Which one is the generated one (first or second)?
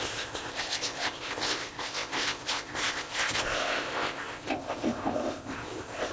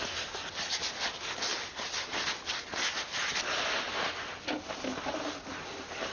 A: first